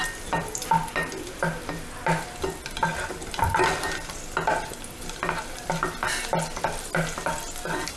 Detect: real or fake real